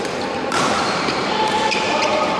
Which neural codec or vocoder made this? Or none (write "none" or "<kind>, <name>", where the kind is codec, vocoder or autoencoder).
vocoder, BigVGAN v2